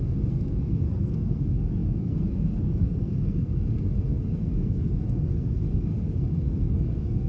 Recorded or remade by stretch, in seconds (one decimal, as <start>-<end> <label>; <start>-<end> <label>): 0.0-7.3 remade